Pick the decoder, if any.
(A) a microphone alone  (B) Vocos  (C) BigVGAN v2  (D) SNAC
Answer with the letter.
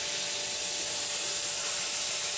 A